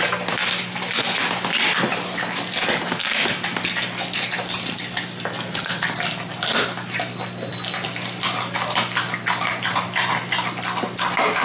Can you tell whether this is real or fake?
real